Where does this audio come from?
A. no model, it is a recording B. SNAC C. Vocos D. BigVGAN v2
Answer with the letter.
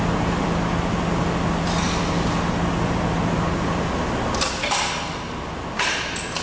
A